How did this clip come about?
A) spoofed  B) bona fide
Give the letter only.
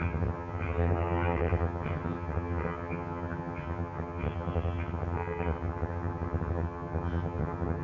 A